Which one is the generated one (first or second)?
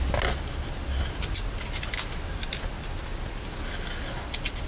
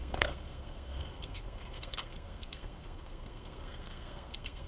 second